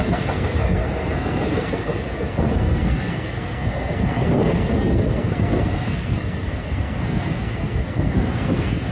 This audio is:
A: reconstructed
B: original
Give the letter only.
A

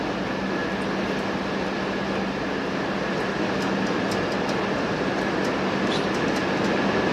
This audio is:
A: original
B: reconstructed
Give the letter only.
A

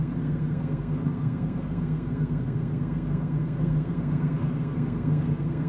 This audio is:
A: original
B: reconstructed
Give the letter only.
B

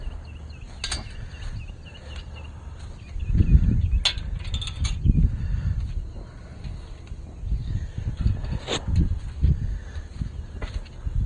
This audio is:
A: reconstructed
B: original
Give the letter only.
B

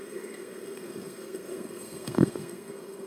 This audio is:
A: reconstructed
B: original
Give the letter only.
A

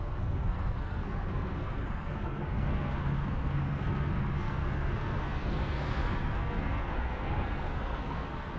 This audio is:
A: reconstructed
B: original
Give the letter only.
A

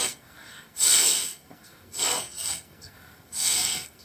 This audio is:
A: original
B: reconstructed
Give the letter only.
B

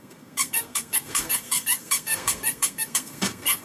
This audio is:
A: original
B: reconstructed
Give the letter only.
B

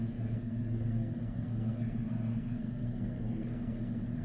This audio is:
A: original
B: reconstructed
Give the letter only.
B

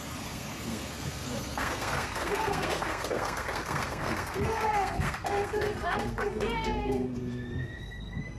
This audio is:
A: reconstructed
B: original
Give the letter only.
A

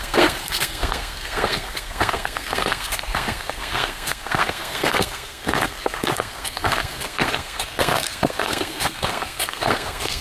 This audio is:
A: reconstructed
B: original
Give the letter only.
A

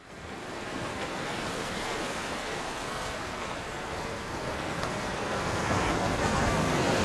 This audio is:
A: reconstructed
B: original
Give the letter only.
A